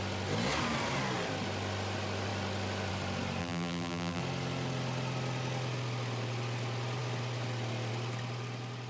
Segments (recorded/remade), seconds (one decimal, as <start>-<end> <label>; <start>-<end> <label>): 0.0-3.4 recorded; 3.4-4.2 remade; 4.2-8.9 recorded